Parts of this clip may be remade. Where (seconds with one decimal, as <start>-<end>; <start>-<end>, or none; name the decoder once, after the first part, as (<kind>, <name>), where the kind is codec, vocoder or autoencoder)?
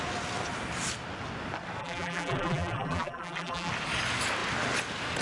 1.8-3.7 (vocoder, BigVGAN v2)